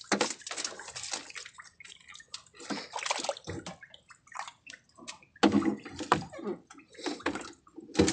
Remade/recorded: recorded